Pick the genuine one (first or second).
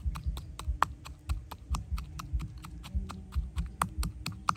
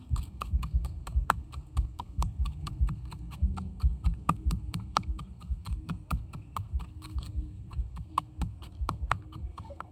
first